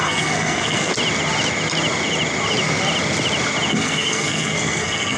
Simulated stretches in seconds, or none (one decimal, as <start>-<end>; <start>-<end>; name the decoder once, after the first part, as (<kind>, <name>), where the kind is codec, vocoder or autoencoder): 0.0-0.9 (codec, SNAC); 3.7-5.2